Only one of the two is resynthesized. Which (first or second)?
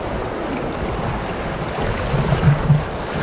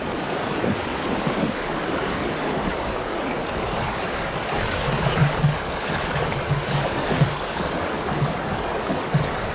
second